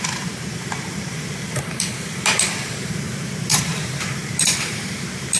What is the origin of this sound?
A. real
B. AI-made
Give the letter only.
B